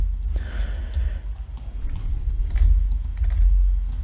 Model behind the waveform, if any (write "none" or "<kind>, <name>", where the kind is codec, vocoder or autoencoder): none